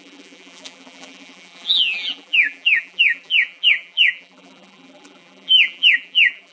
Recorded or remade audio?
remade